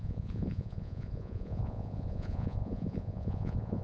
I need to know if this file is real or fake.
fake